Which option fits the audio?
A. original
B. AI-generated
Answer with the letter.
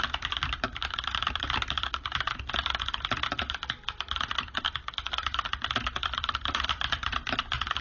B